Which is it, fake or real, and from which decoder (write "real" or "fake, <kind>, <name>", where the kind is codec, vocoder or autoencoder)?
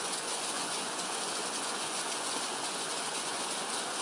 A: fake, vocoder, Vocos